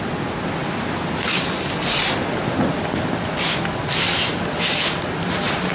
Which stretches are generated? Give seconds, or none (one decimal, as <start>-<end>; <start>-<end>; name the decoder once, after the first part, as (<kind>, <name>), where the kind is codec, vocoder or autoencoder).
none